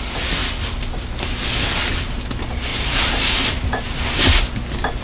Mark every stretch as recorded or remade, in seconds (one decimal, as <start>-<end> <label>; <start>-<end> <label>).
0.0-2.7 recorded; 2.7-4.2 remade; 4.2-5.0 recorded